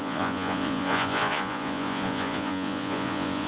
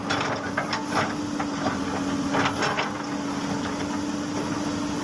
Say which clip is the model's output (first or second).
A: first